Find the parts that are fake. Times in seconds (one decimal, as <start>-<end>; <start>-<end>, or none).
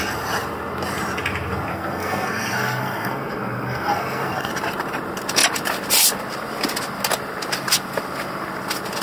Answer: 1.7-4.5